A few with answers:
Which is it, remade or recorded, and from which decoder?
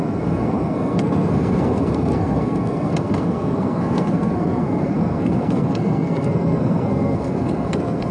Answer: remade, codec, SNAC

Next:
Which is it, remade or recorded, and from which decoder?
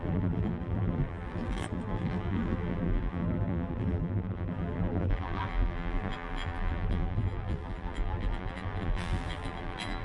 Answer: remade, vocoder, BigVGAN v2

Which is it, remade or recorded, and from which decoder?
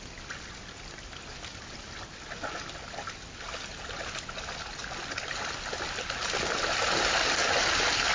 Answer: recorded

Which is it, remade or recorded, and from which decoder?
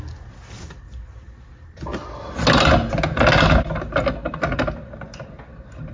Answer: recorded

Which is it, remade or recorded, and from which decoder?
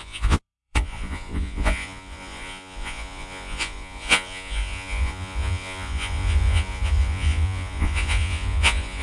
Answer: remade, vocoder, Vocos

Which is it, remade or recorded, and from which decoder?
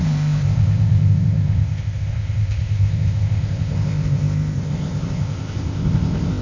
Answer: remade, codec, ZipCodec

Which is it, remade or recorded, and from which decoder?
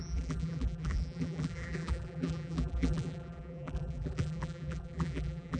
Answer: remade, vocoder, BigVGAN v2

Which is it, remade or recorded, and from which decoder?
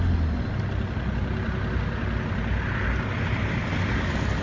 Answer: recorded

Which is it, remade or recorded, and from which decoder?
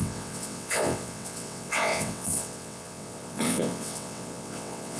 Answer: remade, vocoder, WaveNeXt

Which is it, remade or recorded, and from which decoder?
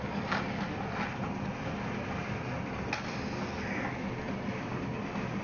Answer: recorded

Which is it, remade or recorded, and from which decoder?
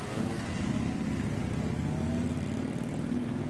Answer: recorded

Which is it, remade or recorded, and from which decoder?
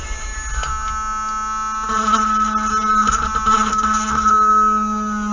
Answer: recorded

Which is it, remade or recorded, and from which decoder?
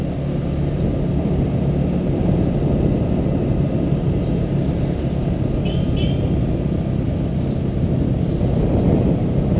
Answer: recorded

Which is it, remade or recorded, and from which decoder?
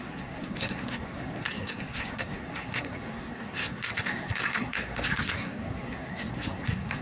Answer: remade, codec, SNAC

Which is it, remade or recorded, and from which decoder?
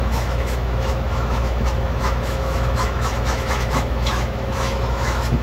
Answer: remade, autoencoder, DAC-VAE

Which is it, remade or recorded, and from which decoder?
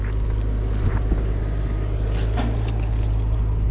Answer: recorded